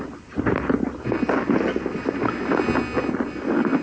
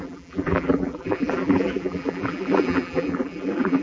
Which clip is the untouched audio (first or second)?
first